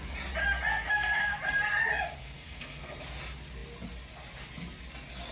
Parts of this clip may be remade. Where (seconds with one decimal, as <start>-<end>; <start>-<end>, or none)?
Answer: 0.7-1.4; 2.2-3.0